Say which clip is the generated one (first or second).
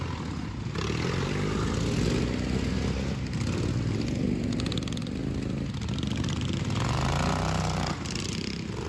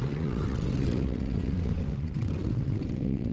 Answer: second